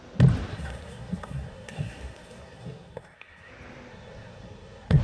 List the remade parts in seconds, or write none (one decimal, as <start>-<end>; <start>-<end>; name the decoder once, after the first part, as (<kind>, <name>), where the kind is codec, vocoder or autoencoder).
0.5-3.5 (codec, SNAC); 3.9-5.0